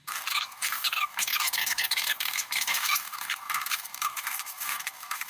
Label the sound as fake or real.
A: fake